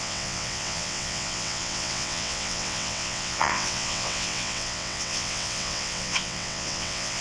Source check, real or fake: fake